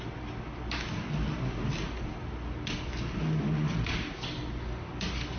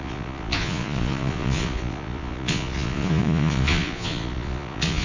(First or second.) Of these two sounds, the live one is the first